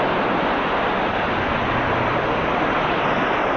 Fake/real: real